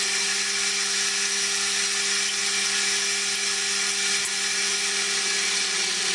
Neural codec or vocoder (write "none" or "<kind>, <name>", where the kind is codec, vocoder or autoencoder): none